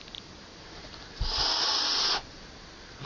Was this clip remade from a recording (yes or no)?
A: no